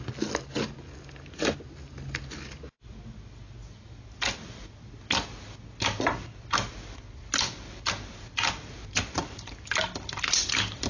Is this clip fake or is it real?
real